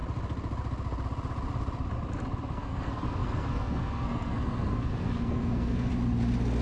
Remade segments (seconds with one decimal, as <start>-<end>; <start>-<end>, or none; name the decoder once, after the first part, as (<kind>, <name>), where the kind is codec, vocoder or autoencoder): 2.5-5.9 (codec, SNAC)